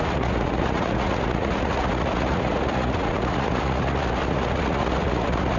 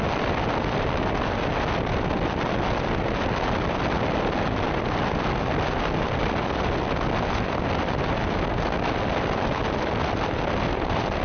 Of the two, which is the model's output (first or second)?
first